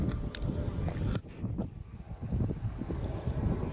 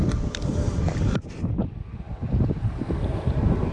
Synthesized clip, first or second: second